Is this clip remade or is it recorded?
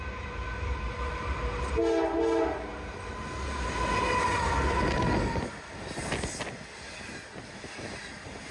recorded